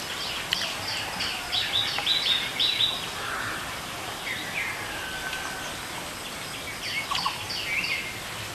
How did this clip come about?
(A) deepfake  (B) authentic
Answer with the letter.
B